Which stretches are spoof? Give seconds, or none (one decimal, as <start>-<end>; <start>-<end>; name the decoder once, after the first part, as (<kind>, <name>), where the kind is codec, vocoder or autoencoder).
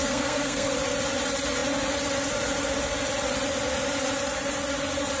0.0-0.7 (codec, SNAC)